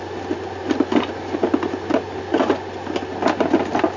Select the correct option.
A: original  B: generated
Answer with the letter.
A